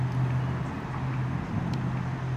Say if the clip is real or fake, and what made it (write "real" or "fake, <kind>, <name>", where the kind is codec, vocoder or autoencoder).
real